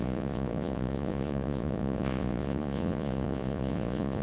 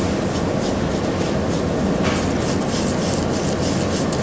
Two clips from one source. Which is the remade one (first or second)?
first